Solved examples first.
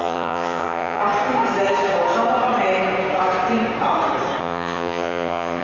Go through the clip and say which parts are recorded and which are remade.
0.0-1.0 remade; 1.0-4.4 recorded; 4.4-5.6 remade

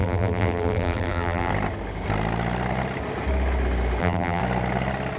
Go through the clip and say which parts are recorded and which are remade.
0.0-1.5 remade; 1.5-4.0 recorded; 4.0-4.4 remade; 4.4-5.2 recorded

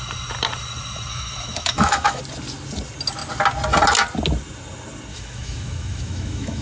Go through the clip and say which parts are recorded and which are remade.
0.0-1.1 recorded; 1.1-2.2 remade; 2.2-5.1 recorded; 5.1-6.6 remade